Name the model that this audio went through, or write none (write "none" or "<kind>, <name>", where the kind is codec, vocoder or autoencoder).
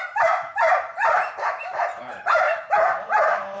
vocoder, BigVGAN v2